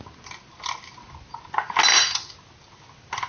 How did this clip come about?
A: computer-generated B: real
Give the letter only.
B